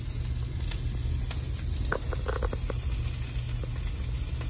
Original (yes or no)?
yes